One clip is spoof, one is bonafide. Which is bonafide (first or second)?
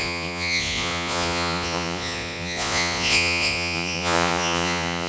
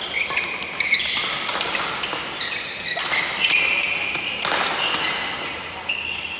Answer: second